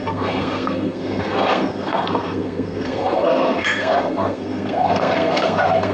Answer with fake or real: fake